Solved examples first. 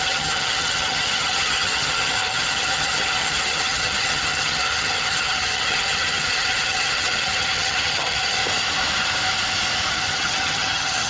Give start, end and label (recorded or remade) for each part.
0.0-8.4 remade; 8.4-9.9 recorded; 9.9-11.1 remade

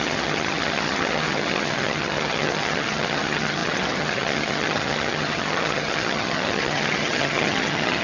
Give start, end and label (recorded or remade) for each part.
0.0-8.0 remade

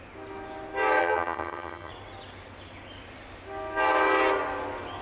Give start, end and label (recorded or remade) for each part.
0.0-1.0 recorded; 1.0-1.9 remade; 1.9-5.0 recorded

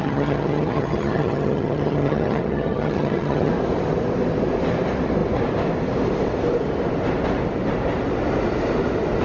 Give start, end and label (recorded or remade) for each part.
0.0-3.5 remade; 3.5-9.2 recorded

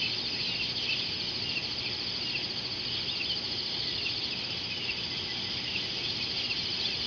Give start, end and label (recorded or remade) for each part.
0.0-7.1 recorded

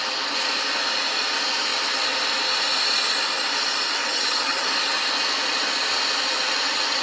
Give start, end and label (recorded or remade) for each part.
0.0-4.1 recorded; 4.1-4.7 remade; 4.7-7.0 recorded

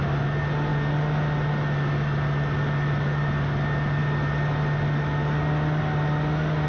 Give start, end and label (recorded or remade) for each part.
0.0-6.7 recorded

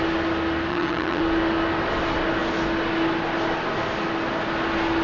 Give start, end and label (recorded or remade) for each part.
0.0-0.7 recorded; 0.7-1.2 remade; 1.2-5.0 recorded